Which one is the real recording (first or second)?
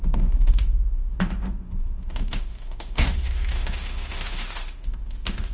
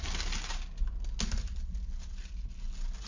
second